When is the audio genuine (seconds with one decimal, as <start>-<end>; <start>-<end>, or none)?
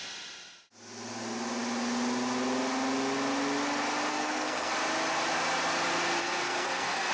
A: 0.0-4.1; 4.7-6.2